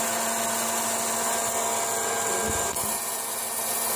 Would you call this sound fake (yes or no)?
no